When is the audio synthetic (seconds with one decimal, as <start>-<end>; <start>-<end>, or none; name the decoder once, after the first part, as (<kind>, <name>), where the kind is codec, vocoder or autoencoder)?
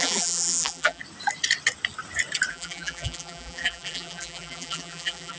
0.0-1.0 (vocoder, BigVGAN v2); 2.5-5.4